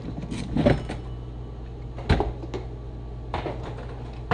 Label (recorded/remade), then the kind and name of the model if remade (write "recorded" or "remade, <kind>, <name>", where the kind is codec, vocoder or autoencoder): recorded